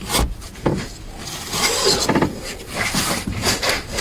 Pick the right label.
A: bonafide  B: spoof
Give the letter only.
A